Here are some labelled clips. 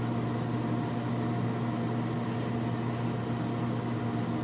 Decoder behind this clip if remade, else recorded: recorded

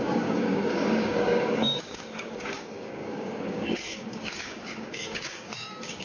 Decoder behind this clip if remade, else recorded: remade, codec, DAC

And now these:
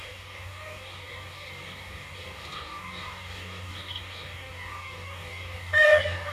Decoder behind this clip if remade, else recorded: remade, codec, DAC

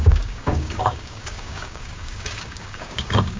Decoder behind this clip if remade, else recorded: remade, codec, DAC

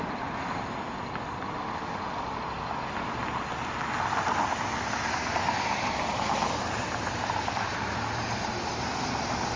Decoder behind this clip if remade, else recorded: recorded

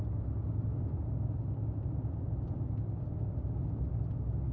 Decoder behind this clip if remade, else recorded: recorded